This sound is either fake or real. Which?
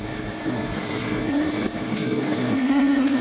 fake